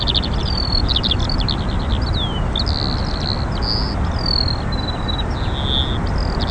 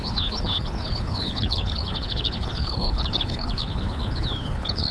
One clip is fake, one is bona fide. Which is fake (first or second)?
second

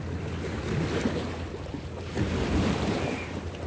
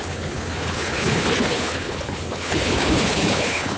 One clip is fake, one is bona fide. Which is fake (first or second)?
second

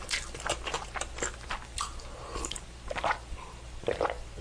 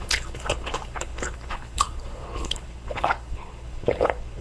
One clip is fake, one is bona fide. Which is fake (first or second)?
second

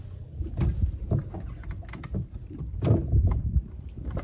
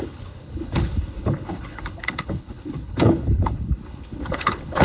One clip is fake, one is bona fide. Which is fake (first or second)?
second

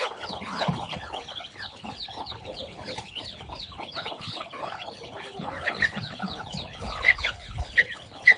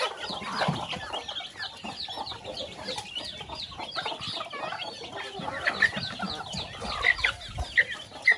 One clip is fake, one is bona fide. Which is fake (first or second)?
first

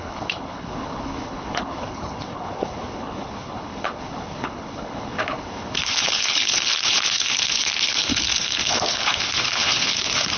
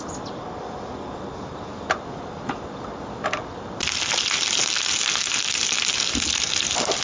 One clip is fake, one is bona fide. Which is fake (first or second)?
first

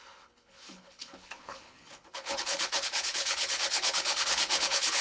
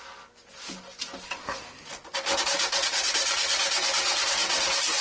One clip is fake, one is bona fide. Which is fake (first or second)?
first